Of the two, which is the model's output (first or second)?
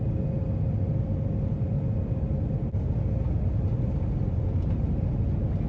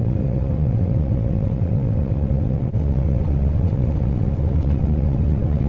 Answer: second